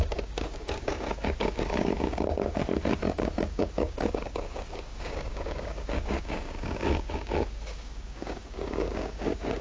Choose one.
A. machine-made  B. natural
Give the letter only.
A